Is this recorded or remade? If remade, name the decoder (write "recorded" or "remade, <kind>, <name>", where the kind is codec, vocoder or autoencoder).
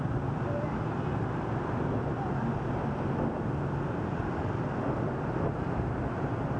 recorded